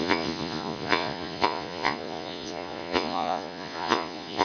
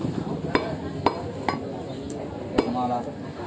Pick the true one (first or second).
second